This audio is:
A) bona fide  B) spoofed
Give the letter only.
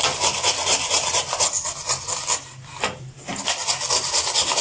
A